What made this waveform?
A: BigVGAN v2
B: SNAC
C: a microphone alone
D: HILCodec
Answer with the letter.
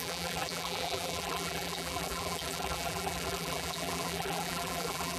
A